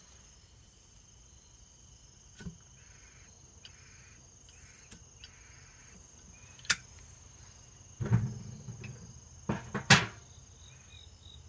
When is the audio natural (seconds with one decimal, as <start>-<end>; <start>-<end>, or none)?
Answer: 2.9-11.5